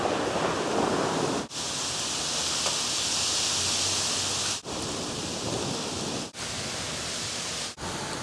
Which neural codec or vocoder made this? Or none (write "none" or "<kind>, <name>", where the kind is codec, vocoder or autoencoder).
none